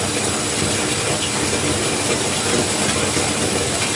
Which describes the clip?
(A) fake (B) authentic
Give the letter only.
B